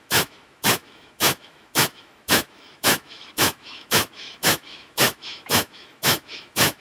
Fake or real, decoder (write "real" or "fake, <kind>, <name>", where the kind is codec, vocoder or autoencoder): fake, autoencoder, DAC-VAE